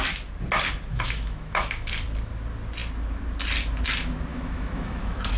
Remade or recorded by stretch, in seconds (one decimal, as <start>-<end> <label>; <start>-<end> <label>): 0.0-0.9 recorded; 0.9-1.9 remade; 1.9-4.3 recorded; 4.3-5.4 remade